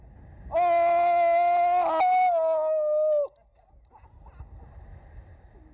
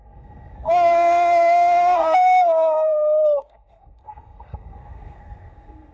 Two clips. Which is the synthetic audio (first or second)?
second